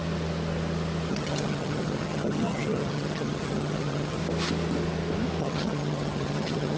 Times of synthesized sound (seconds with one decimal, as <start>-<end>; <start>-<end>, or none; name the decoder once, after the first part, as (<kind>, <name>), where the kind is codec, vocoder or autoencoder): 1.1-4.2 (vocoder, HiFi-GAN); 5.4-6.8